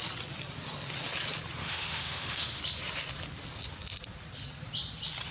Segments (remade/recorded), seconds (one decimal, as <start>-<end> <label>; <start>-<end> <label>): 0.0-1.6 recorded; 1.6-2.6 remade; 2.6-5.3 recorded